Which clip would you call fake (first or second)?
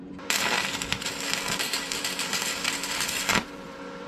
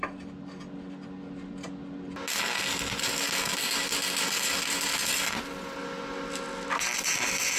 first